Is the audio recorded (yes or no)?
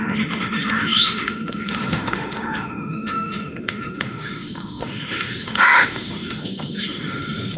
no